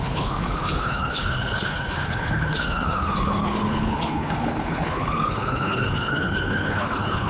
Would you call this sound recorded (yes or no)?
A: no